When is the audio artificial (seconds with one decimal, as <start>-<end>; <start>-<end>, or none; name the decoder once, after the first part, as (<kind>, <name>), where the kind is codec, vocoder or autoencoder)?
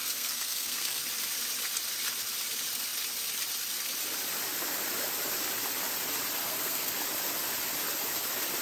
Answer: 0.0-1.0 (codec, SNAC); 6.4-6.9